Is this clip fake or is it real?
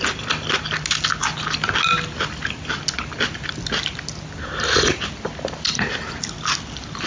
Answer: real